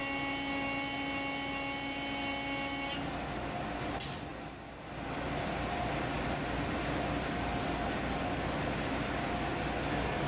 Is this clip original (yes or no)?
yes